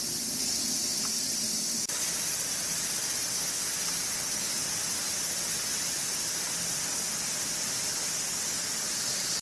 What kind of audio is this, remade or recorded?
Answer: recorded